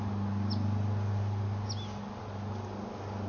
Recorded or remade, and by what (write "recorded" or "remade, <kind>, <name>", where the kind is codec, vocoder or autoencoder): recorded